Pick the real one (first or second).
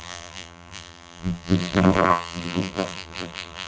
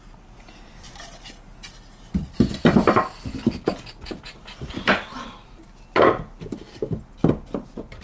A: second